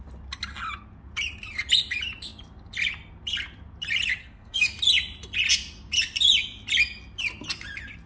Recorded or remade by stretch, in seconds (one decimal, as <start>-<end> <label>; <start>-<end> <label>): 0.0-4.2 recorded; 4.2-4.8 remade; 4.8-8.1 recorded